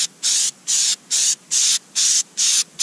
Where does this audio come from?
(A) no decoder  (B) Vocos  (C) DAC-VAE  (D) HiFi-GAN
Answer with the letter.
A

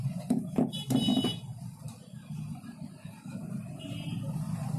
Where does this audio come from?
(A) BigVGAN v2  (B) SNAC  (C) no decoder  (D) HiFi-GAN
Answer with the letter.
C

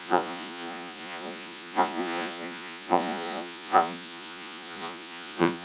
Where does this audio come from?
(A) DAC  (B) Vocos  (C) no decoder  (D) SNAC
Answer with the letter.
B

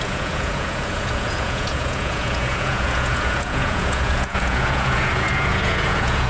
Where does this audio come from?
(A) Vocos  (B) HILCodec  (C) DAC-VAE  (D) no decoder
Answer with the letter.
A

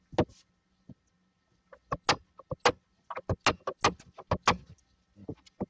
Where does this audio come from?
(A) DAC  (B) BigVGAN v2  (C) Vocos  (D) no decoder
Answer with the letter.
D